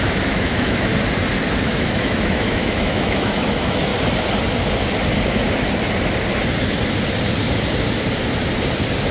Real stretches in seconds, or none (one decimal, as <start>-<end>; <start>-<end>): 0.9-1.5; 3.9-9.1

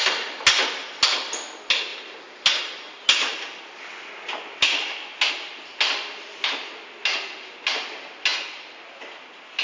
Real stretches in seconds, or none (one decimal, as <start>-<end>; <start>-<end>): 0.0-9.6